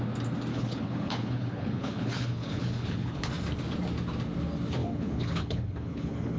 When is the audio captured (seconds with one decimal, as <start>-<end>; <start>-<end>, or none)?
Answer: 0.0-0.5; 3.3-4.8